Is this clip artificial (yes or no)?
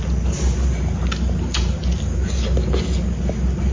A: no